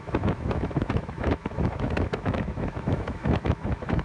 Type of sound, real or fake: fake